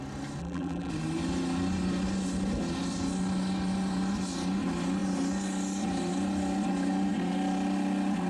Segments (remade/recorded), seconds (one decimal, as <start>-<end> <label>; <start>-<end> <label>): 0.0-0.4 recorded; 0.4-0.9 remade; 0.9-8.3 recorded